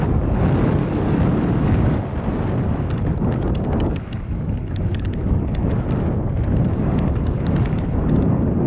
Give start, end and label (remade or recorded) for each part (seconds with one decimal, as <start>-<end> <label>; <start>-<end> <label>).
0.0-2.1 remade; 2.1-2.6 recorded; 2.6-5.6 remade; 5.6-6.7 recorded; 6.7-8.7 remade